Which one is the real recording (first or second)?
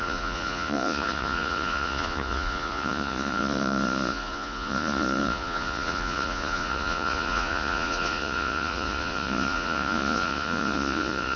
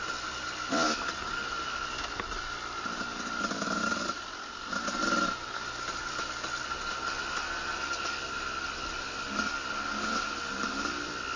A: second